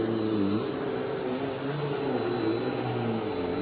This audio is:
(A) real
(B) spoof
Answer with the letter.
A